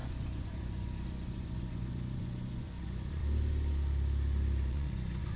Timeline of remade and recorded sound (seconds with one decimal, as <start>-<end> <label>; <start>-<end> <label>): 0.0-3.2 remade; 3.2-4.7 recorded; 4.7-5.4 remade